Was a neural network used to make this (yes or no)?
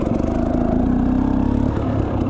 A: no